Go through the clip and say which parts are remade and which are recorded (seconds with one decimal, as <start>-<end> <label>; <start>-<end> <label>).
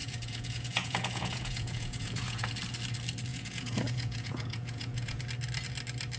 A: 0.0-2.5 remade; 2.5-3.3 recorded; 3.3-5.2 remade; 5.2-6.2 recorded